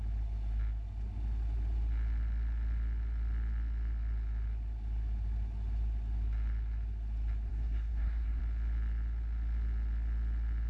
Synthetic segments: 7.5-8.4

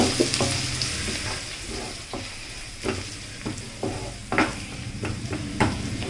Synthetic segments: 1.5-2.2; 4.2-5.6

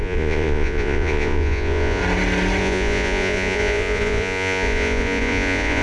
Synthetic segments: 0.0-2.0; 2.6-5.8

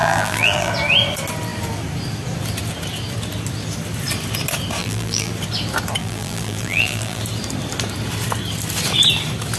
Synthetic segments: 0.0-0.7; 4.8-5.3; 6.0-7.2

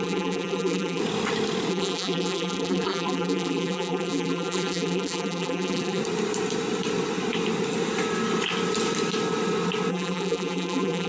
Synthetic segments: 0.0-1.0; 1.7-6.0; 9.9-11.1

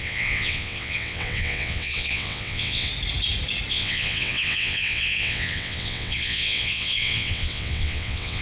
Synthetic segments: 0.0-2.9; 3.7-8.4